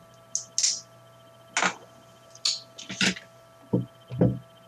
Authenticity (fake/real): real